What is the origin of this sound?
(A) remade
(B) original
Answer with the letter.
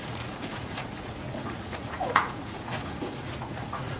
A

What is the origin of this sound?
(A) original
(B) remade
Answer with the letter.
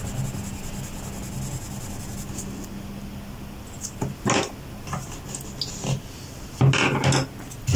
A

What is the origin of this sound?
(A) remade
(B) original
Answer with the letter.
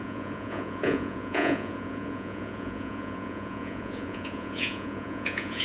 A